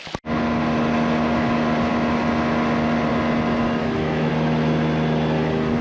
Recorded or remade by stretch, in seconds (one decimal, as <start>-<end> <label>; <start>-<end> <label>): 0.0-3.8 recorded; 3.8-4.3 remade; 4.3-5.8 recorded